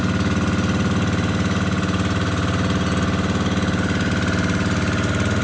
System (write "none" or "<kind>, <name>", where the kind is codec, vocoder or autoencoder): none